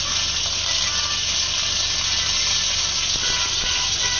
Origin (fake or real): real